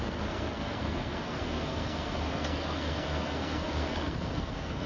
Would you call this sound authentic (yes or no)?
no